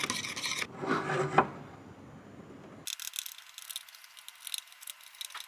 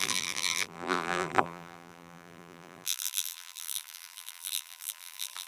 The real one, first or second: first